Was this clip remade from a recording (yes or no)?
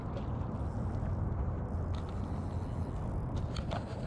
no